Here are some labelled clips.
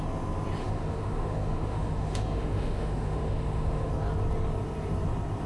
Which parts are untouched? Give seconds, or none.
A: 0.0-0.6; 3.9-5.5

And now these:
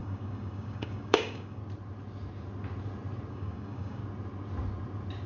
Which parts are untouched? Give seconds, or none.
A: 1.6-3.3; 4.0-5.3

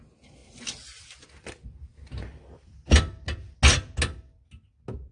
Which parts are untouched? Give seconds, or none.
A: 0.0-5.1

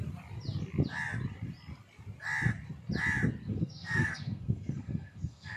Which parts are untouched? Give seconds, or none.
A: 0.0-3.4

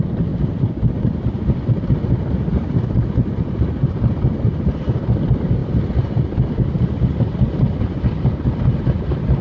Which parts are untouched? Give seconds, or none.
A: 0.0-2.5; 4.5-9.4

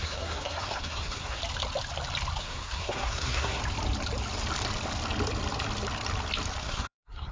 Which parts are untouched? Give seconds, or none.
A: 1.4-2.4; 3.6-6.6

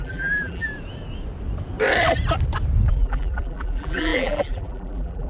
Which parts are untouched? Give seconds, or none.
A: 0.7-2.9